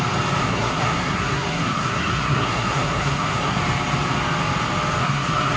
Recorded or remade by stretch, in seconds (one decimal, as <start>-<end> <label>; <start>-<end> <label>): 0.0-0.4 recorded; 0.4-3.6 remade; 3.6-5.0 recorded; 5.0-5.6 remade